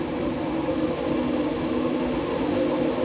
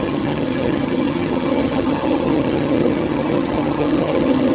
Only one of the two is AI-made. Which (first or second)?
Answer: second